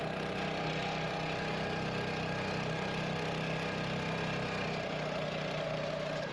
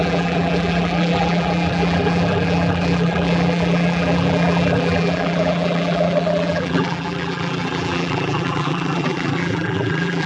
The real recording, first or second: first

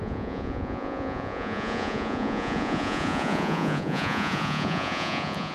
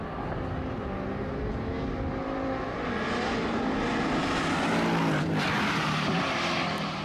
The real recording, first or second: second